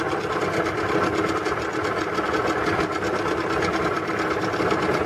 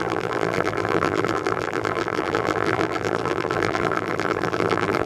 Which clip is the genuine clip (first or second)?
first